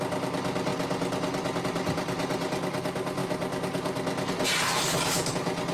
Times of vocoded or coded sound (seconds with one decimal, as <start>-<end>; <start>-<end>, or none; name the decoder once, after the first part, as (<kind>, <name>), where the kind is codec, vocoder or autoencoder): none